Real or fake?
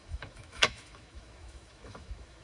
fake